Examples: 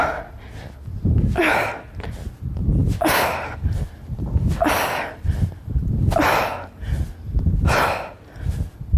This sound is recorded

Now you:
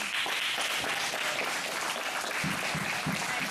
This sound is recorded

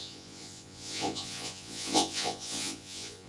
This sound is remade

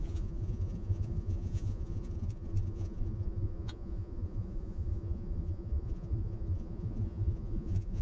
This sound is remade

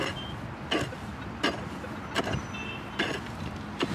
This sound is recorded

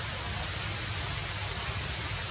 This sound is recorded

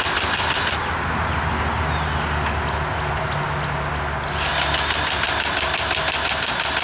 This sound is recorded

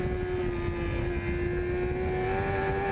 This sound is recorded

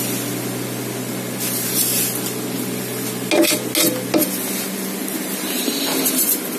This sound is recorded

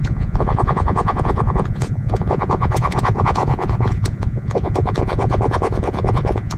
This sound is remade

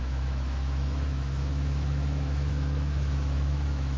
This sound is remade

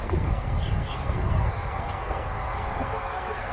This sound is remade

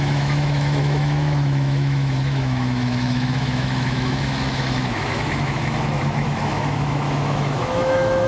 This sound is remade